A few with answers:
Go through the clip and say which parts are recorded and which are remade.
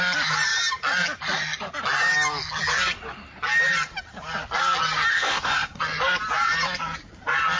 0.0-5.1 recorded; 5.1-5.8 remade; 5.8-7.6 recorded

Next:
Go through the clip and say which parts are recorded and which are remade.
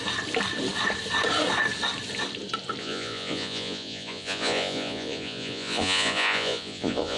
0.0-2.8 recorded; 2.8-7.2 remade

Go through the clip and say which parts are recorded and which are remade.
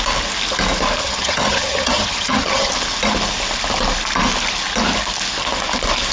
0.0-1.0 recorded; 1.0-2.7 remade; 2.7-6.1 recorded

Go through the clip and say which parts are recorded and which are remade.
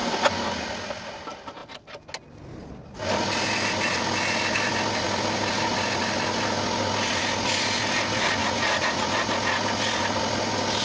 0.0-8.4 recorded; 8.4-9.1 remade; 9.1-10.8 recorded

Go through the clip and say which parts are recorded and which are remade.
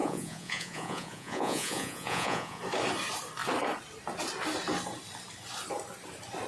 0.0-2.6 remade; 2.6-6.5 recorded